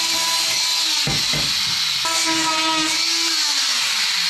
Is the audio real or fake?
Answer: real